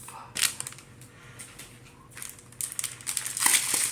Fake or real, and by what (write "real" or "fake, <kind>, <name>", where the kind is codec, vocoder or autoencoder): real